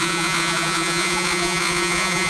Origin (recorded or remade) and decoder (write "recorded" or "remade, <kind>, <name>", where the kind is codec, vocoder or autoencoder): remade, vocoder, Vocos